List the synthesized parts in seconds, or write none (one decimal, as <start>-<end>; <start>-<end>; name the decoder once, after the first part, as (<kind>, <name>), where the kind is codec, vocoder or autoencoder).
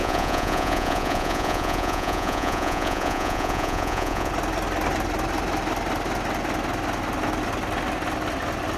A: 0.0-4.3 (vocoder, Vocos)